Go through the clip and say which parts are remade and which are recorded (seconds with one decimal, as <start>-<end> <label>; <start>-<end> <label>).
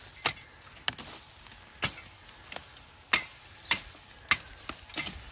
0.0-5.3 recorded